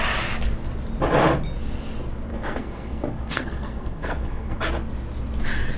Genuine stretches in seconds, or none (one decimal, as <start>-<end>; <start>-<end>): 0.0-2.3; 4.6-5.8